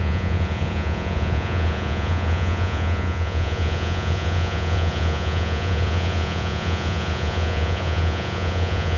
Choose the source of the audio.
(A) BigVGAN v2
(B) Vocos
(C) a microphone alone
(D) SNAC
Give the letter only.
B